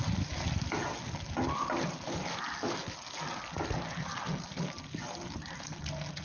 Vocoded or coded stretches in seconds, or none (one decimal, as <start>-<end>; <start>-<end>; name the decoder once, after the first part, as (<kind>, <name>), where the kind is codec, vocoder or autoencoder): none